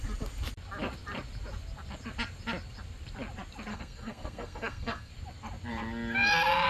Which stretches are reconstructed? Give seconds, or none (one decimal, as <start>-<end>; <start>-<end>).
3.7-5.1